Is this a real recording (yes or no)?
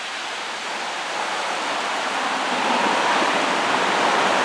yes